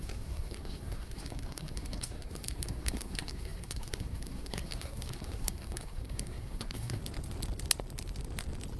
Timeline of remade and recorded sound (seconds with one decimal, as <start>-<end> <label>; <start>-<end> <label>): 0.0-7.0 remade; 7.0-8.8 recorded